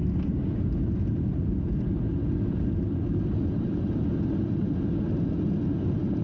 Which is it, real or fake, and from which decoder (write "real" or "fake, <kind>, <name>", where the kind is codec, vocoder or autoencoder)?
real